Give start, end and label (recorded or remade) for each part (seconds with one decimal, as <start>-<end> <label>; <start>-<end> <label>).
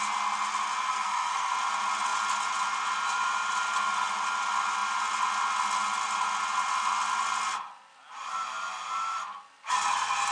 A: 0.0-0.9 recorded; 0.9-1.5 remade; 1.5-10.3 recorded